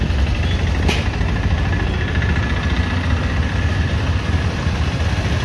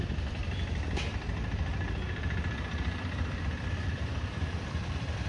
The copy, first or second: second